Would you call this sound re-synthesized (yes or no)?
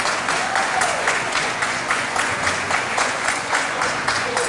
yes